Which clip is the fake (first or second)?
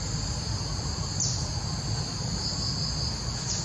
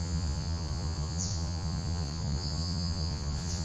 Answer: second